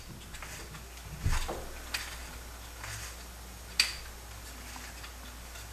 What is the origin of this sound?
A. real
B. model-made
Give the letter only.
A